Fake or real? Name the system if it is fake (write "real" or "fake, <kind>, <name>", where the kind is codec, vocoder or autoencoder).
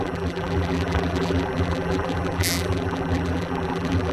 fake, vocoder, BigVGAN v2